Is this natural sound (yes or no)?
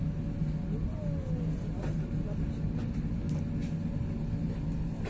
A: yes